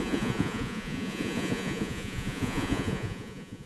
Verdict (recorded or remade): remade